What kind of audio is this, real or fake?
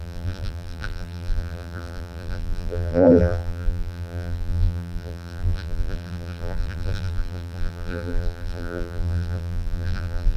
fake